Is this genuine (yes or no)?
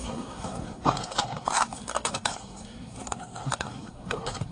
no